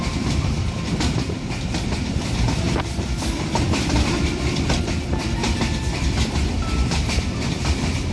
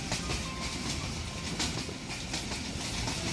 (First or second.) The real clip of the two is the second